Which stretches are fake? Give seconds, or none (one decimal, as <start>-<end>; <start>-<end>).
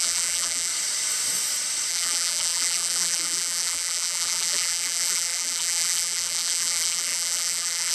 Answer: 0.0-0.7; 1.9-7.9